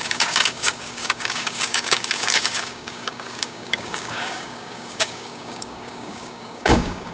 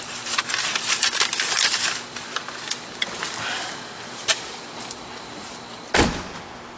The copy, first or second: first